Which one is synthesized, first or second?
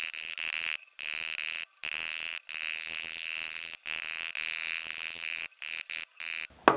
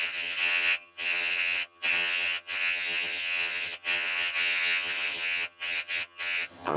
second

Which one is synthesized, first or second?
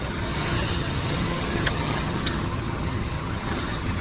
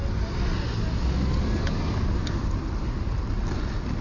first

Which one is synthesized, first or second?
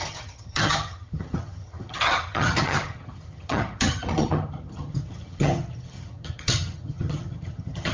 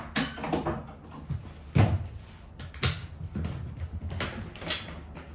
first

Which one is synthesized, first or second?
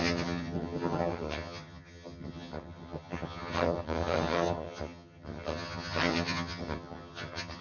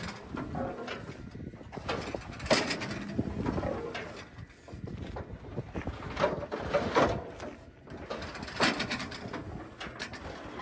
first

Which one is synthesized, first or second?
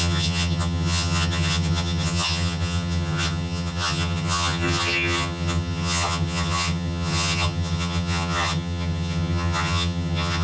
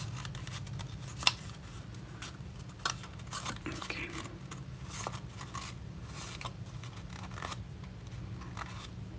first